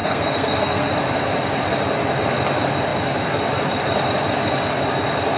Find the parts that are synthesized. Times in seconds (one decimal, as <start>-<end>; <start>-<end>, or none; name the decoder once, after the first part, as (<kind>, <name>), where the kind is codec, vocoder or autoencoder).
0.0-0.9 (codec, SNAC)